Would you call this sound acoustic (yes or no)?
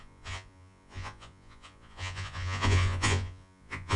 no